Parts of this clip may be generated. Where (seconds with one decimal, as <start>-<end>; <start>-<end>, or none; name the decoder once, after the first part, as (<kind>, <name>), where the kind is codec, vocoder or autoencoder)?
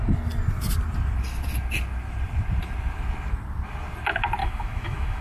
4.4-5.2 (autoencoder, DAC-VAE)